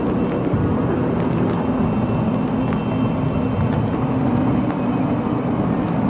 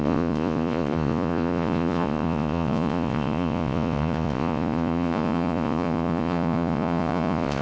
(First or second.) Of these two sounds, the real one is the first